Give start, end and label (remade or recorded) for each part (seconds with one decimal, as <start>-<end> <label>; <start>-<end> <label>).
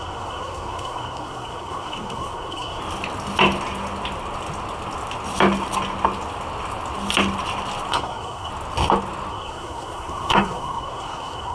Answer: 0.0-2.8 remade; 2.8-7.9 recorded; 7.9-8.5 remade; 8.5-9.3 recorded; 9.3-11.5 remade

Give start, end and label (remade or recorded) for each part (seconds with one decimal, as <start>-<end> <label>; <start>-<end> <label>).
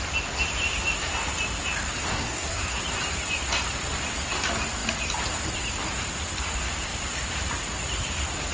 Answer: 0.0-2.1 recorded; 2.1-2.8 remade; 2.8-8.5 recorded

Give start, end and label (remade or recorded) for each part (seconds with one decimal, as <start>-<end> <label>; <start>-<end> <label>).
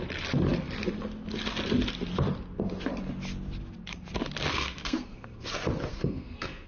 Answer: 0.0-4.5 recorded; 4.5-5.5 remade; 5.5-5.9 recorded; 5.9-6.7 remade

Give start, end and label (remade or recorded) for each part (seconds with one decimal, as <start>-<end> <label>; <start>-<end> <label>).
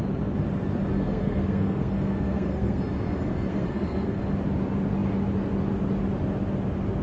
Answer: 0.0-1.0 recorded; 1.0-2.8 remade; 2.8-3.5 recorded; 3.5-4.2 remade; 4.2-7.0 recorded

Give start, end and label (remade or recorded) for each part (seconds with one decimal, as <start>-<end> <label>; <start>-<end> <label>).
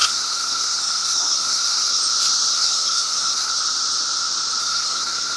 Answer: 0.0-2.0 remade; 2.0-2.5 recorded; 2.5-3.5 remade; 3.5-4.6 recorded; 4.6-5.4 remade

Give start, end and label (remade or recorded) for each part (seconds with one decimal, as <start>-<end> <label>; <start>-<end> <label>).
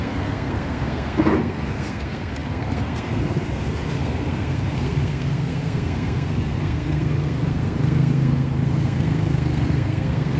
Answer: 0.0-10.4 remade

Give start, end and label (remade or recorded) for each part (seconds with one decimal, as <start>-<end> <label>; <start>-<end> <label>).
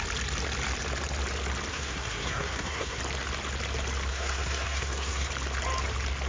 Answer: 0.0-1.7 recorded; 1.7-3.0 remade; 3.0-4.1 recorded; 4.1-5.3 remade; 5.3-6.3 recorded